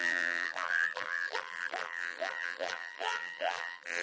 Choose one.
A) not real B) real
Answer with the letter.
A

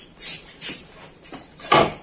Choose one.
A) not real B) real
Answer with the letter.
A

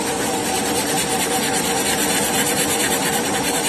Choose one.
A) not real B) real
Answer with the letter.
A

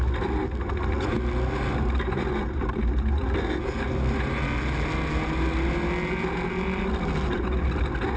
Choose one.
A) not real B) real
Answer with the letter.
B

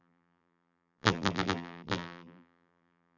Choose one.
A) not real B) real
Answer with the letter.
A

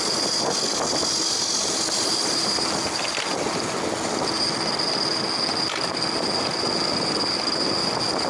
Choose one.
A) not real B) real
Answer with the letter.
B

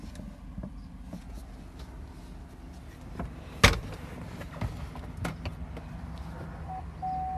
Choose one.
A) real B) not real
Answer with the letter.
A